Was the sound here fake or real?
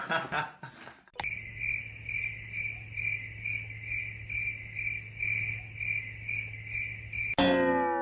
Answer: real